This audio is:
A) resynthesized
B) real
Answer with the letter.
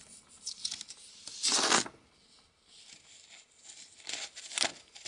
B